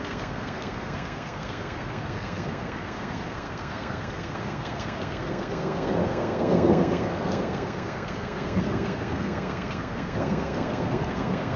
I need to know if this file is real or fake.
fake